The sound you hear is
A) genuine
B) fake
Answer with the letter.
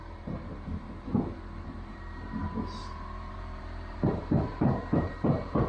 B